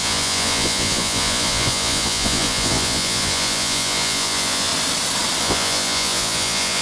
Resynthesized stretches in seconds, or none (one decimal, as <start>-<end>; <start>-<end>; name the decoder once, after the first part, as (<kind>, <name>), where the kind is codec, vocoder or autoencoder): 0.0-4.7 (vocoder, Vocos); 5.4-6.8